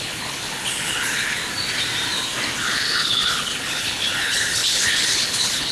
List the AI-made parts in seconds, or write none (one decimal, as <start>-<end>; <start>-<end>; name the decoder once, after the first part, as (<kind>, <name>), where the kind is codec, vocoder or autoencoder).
0.0-1.4 (codec, HILCodec); 2.6-5.7